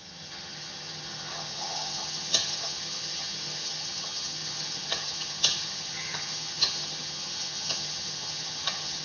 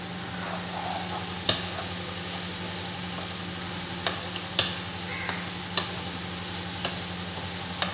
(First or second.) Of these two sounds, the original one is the second